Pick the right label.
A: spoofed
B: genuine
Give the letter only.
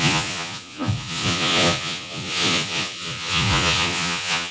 A